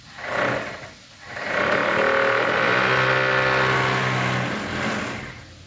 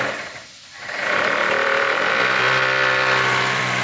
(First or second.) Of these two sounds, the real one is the first